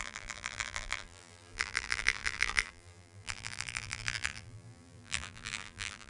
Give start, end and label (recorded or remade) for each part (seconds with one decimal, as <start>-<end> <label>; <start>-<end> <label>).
0.0-6.1 remade